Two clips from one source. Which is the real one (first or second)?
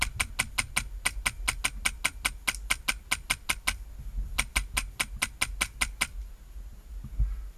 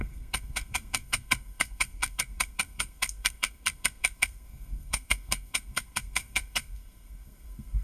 first